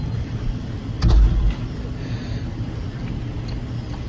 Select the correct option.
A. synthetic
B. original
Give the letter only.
B